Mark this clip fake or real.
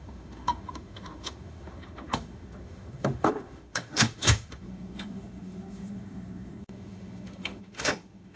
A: fake